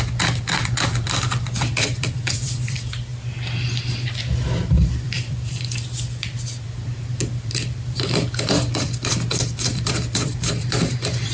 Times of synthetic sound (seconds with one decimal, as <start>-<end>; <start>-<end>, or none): 0.0-3.1; 4.7-11.3